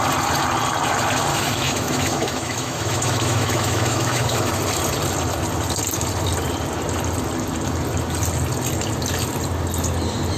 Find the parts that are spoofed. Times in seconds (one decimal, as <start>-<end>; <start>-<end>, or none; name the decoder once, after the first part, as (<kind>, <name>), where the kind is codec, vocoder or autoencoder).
1.3-4.5 (autoencoder, DAC-VAE)